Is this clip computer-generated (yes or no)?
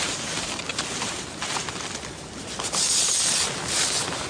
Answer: no